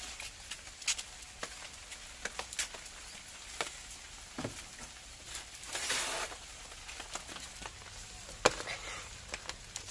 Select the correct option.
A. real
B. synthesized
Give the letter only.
A